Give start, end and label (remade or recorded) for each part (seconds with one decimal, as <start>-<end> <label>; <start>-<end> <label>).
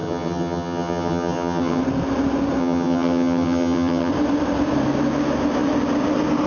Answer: 0.0-1.8 remade; 1.8-2.6 recorded; 2.6-4.1 remade; 4.1-6.5 recorded